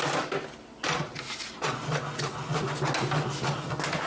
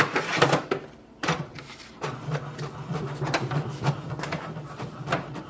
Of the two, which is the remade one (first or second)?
second